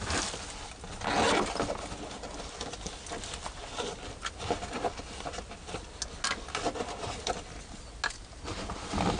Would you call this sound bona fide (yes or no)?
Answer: yes